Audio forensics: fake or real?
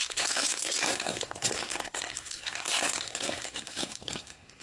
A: fake